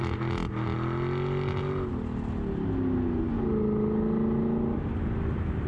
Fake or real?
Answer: real